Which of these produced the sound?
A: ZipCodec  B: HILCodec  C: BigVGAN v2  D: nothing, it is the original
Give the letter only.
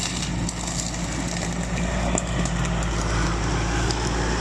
D